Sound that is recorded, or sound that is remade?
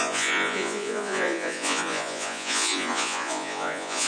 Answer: remade